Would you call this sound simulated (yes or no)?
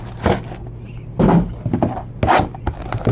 no